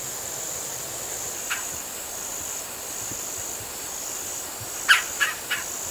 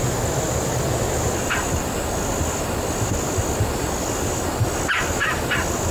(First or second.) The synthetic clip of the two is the first